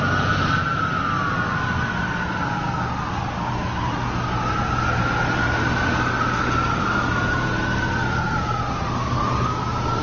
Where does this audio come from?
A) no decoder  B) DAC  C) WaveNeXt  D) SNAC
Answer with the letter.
A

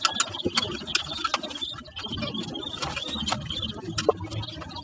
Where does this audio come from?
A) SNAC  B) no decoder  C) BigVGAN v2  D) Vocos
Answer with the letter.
B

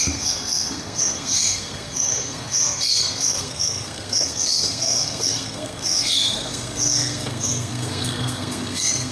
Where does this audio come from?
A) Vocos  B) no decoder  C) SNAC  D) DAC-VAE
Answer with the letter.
C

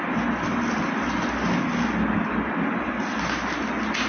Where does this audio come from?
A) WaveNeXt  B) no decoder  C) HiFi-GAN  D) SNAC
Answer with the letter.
B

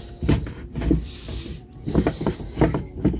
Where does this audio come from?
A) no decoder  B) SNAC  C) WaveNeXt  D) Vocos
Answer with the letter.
A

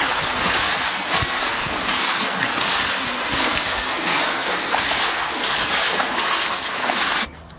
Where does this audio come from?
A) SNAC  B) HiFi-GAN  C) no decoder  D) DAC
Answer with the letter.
A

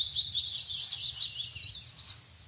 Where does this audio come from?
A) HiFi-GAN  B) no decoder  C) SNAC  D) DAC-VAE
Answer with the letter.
B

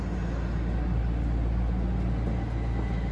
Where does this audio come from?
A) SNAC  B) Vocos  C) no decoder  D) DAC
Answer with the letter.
C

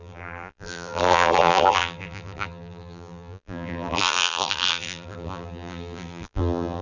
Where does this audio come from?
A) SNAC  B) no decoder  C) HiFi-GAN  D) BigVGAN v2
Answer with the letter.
D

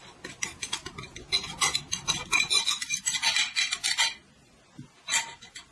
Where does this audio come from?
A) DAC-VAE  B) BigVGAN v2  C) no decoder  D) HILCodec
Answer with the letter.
C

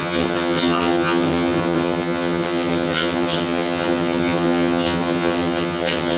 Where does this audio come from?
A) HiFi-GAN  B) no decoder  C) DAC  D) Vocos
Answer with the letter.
A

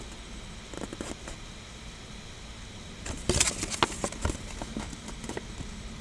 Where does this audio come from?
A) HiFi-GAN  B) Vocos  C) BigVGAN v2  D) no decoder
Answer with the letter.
D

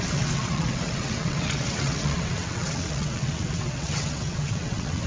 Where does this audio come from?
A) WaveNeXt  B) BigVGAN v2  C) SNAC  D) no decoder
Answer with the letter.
A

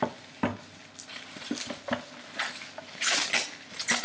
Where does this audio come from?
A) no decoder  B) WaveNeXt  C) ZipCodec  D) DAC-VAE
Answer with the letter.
A